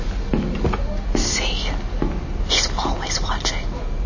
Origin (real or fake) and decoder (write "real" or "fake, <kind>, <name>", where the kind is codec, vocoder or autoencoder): real